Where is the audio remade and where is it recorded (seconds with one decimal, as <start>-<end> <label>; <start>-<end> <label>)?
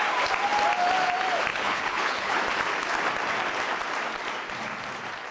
0.0-1.5 recorded; 1.5-2.4 remade; 2.4-5.3 recorded